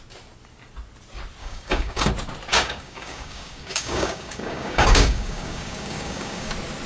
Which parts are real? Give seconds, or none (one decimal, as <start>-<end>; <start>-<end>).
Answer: 0.0-1.4; 2.1-2.5; 6.5-6.9

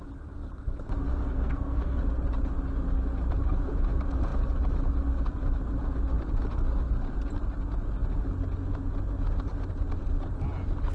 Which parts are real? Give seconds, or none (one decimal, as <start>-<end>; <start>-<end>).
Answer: 0.0-1.1; 2.0-10.9